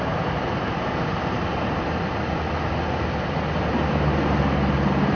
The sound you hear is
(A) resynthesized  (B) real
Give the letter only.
B